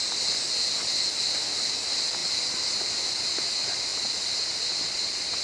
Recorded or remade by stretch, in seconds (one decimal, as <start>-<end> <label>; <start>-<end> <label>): 0.0-5.4 recorded